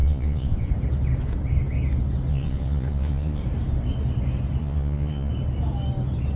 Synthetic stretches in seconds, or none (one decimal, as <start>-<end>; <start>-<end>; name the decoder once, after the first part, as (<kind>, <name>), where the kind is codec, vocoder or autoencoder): 0.0-0.7 (vocoder, Vocos); 2.3-3.4; 4.6-5.3